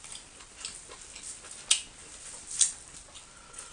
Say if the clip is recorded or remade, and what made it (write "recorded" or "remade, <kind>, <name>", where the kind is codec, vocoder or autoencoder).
recorded